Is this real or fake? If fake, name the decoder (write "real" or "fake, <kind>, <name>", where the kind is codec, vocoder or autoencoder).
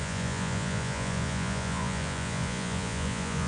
fake, vocoder, Vocos